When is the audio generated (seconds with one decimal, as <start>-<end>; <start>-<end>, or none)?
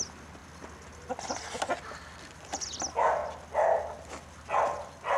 none